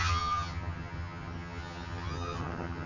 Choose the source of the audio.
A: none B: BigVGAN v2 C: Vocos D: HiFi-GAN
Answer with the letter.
D